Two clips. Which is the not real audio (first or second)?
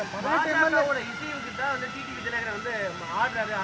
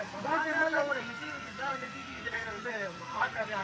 second